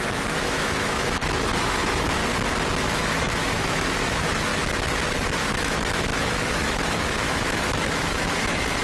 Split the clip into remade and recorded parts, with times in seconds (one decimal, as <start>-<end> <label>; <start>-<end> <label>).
0.0-2.2 remade; 2.2-2.8 recorded; 2.8-4.5 remade; 4.5-5.1 recorded; 5.1-8.8 remade

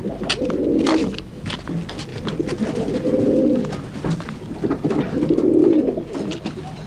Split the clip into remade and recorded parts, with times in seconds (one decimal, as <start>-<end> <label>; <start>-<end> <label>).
0.0-1.0 recorded; 1.0-1.5 remade; 1.5-6.9 recorded

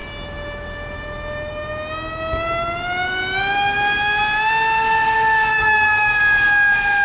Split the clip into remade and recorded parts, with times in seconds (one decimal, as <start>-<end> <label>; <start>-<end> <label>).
0.0-5.5 recorded; 5.5-6.2 remade; 6.2-7.0 recorded

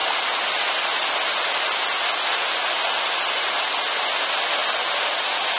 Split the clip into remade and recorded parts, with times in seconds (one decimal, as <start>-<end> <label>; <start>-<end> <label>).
0.0-5.6 recorded